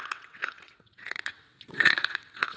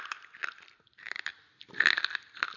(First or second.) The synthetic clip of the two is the first